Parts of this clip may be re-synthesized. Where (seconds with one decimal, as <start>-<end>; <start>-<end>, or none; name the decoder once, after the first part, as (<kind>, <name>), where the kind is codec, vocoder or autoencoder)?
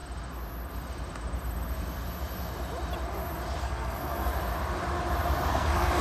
3.6-4.3 (codec, SNAC); 5.5-6.0